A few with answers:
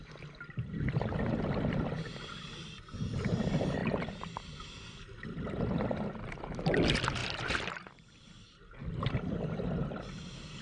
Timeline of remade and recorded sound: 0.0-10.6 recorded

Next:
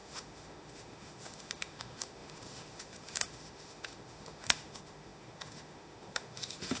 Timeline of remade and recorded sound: 0.0-6.8 remade

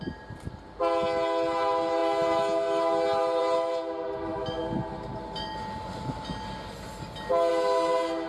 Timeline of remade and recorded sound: 0.0-8.3 recorded

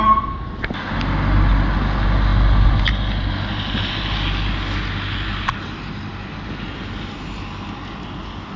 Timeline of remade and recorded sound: 0.0-8.6 recorded

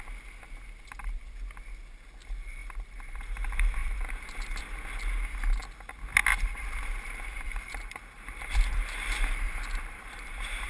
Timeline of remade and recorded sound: 0.0-3.8 recorded; 3.8-4.6 remade; 4.6-6.3 recorded; 6.3-10.7 remade

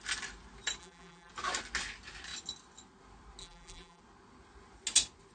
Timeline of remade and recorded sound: 0.0-0.8 recorded; 0.8-1.3 remade; 1.3-3.4 recorded; 3.4-4.0 remade; 4.0-5.3 recorded

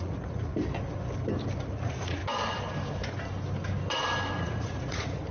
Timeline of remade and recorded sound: 0.0-0.5 remade; 0.5-1.7 recorded; 1.7-2.2 remade; 2.2-4.4 recorded; 4.4-5.3 remade